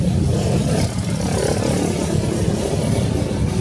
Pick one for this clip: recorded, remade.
recorded